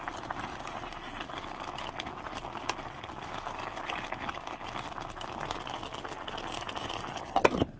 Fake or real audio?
real